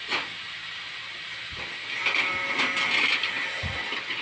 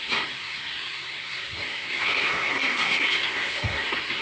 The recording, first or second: first